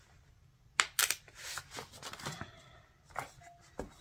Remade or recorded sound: recorded